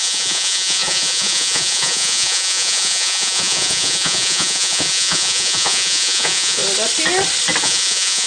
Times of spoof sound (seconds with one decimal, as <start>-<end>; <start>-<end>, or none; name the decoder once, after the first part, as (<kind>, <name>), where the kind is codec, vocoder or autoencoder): 0.0-6.6 (vocoder, Vocos); 7.6-8.3